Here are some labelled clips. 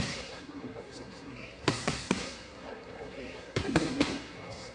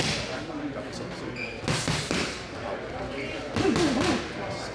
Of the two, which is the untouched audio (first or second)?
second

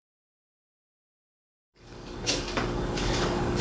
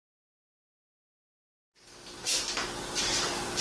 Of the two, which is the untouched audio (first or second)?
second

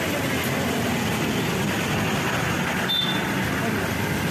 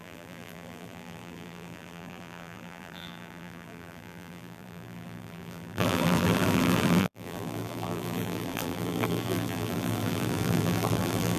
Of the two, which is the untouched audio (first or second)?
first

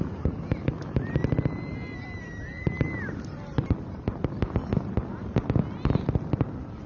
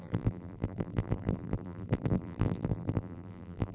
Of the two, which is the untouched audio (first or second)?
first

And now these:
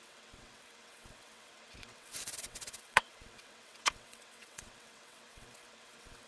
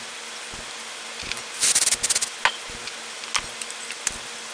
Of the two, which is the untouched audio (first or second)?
second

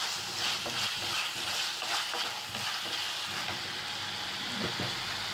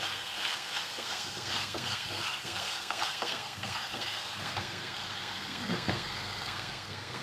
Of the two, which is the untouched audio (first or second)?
first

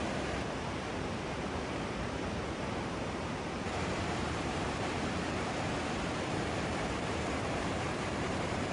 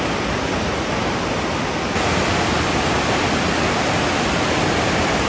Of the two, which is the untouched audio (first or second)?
second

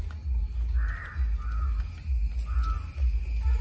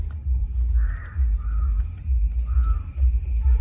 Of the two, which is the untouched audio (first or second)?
first